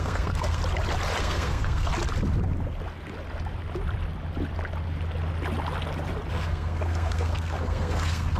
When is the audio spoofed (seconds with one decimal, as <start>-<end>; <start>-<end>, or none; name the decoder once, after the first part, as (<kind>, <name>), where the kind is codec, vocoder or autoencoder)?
0.0-0.6 (codec, SNAC); 1.2-1.9; 6.3-8.4

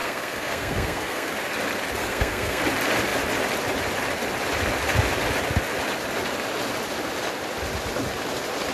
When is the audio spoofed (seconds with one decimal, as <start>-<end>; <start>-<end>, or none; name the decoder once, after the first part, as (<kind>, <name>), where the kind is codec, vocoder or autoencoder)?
0.0-1.3 (codec, SNAC); 2.0-2.6

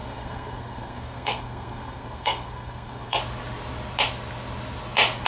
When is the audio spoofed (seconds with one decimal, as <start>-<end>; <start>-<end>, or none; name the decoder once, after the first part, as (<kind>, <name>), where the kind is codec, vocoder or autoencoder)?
0.0-3.2 (codec, SNAC)

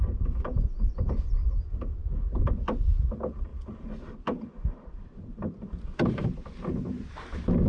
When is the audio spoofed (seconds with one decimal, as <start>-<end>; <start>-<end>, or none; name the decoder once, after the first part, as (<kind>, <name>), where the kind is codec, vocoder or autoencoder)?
none

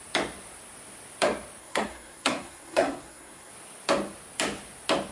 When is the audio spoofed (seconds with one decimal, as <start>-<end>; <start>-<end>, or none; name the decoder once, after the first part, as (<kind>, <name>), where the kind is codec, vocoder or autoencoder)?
1.6-3.5 (codec, SNAC)

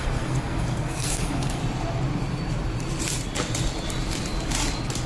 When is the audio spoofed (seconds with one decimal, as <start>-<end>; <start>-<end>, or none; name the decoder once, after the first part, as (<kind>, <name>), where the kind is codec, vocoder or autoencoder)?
0.0-1.6 (codec, SNAC)

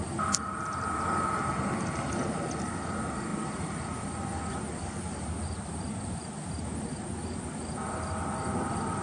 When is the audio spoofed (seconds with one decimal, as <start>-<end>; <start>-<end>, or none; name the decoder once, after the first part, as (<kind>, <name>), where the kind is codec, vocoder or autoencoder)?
none

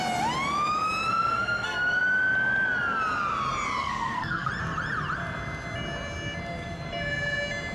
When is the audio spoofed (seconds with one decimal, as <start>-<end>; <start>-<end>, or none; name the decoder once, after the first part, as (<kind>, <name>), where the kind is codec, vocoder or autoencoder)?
1.1-2.0 (codec, SNAC); 3.8-4.5